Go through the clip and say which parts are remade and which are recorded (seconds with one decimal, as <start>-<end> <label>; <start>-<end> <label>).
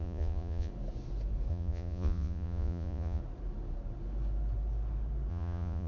0.0-0.7 remade; 0.7-1.5 recorded; 1.5-3.2 remade; 3.2-5.3 recorded; 5.3-5.9 remade